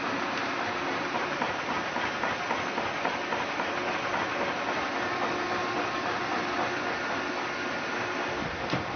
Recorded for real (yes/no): yes